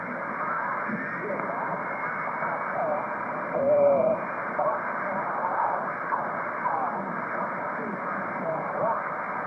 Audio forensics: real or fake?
real